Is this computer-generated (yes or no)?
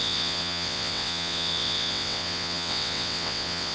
yes